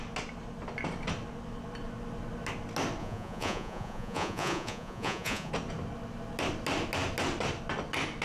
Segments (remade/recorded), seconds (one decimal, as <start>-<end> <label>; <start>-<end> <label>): 0.0-3.0 recorded; 3.0-5.5 remade; 5.5-8.2 recorded

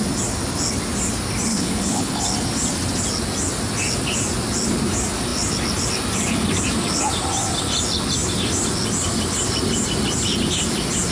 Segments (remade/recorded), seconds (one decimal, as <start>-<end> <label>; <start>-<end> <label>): 0.0-1.5 recorded; 1.5-2.2 remade; 2.2-11.1 recorded

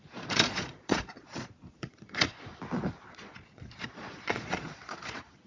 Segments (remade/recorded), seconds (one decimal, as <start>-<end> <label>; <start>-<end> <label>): 0.0-2.5 remade; 2.5-3.1 recorded; 3.1-5.5 remade

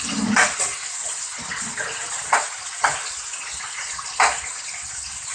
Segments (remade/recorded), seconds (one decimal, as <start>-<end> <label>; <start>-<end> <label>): 0.0-5.3 recorded

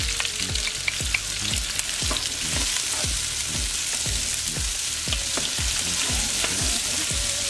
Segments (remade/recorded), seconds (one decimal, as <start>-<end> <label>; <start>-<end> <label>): 0.0-3.4 recorded; 3.4-6.8 remade; 6.8-7.5 recorded

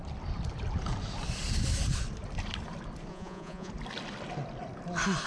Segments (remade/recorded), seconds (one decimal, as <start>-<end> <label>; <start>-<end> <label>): 0.0-3.1 recorded; 3.1-3.7 remade; 3.7-5.3 recorded

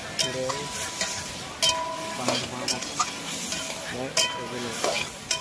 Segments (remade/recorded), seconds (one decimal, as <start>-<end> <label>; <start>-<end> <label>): 0.0-5.4 recorded

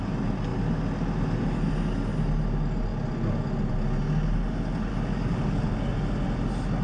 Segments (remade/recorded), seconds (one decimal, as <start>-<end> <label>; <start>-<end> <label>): 0.0-4.9 recorded; 4.9-5.4 remade; 5.4-6.8 recorded